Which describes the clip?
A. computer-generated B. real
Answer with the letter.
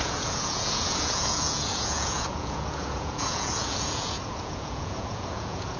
A